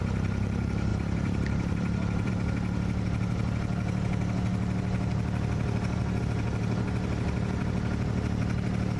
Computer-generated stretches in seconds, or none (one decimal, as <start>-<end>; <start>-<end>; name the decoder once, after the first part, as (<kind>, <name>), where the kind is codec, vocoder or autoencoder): 0.9-2.3 (vocoder, BigVGAN v2)